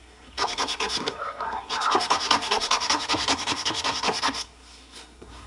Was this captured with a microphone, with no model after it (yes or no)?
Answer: no